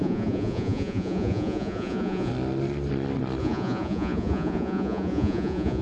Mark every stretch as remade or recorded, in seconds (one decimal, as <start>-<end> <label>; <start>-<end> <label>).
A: 0.0-2.3 remade; 2.3-3.4 recorded; 3.4-5.8 remade